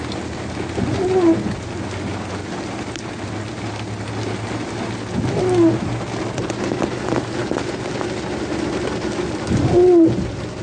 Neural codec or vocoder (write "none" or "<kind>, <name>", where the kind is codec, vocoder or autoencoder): none